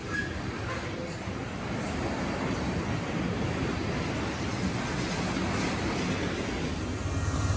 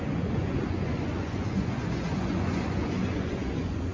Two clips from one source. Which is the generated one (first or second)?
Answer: second